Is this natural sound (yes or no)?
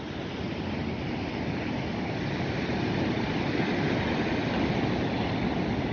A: yes